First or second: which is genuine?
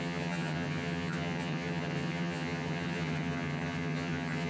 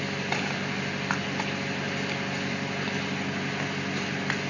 second